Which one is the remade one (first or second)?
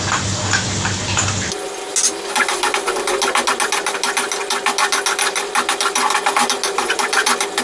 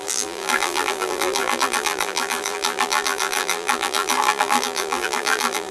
second